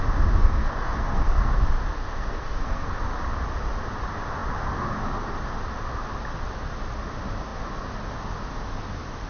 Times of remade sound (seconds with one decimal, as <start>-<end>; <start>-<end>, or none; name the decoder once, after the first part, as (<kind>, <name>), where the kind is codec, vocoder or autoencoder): 0.4-1.6 (codec, SNAC); 2.0-3.0